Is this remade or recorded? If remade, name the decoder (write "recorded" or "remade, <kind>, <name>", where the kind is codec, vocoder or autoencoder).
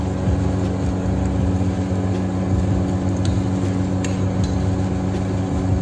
recorded